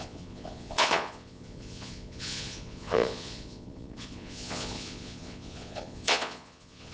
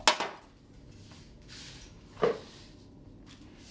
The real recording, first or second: second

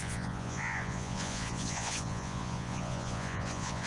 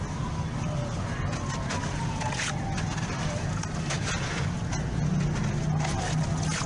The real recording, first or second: second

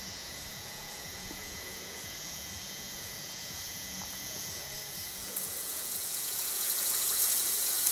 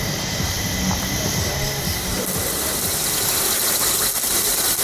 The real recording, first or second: second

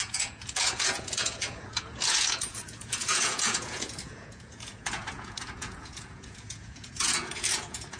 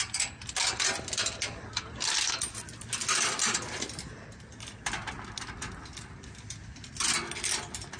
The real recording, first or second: second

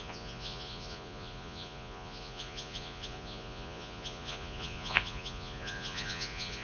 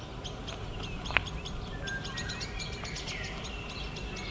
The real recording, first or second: second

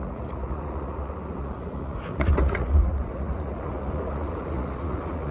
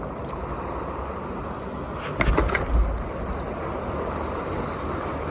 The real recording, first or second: second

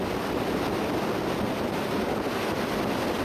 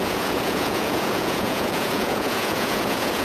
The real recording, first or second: first